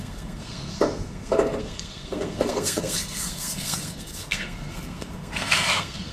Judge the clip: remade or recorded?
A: remade